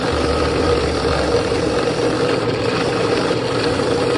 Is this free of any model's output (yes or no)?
yes